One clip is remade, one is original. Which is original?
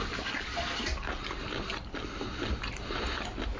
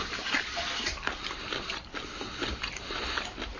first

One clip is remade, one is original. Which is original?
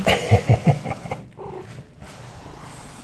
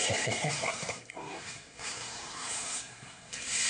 first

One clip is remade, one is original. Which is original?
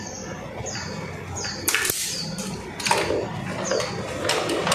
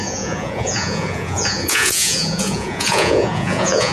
first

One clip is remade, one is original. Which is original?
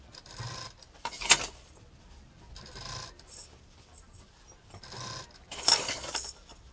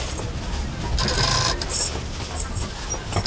second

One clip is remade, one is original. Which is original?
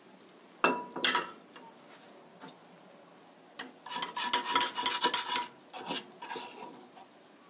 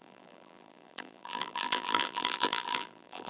first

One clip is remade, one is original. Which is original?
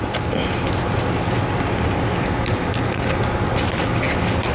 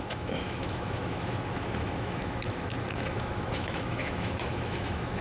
first